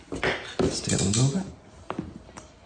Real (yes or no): yes